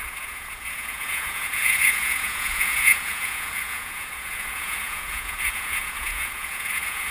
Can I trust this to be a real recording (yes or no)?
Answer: no